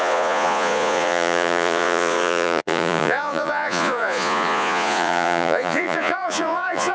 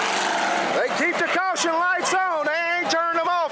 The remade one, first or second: first